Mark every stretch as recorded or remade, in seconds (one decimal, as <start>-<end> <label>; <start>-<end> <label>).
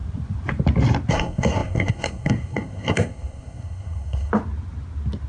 0.0-1.1 recorded; 1.1-4.3 remade; 4.3-5.3 recorded